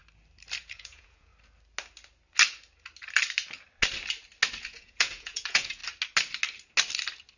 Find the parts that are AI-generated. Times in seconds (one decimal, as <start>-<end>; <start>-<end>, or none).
0.6-1.3; 4.6-5.8